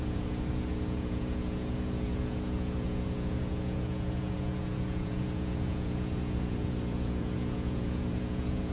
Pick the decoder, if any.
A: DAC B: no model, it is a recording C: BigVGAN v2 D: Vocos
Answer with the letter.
D